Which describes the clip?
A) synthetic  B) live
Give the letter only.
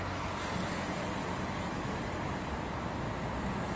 B